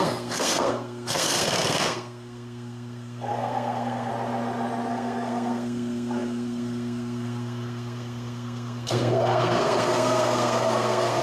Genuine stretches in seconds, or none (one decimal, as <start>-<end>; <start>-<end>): 4.1-4.9